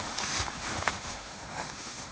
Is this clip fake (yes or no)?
yes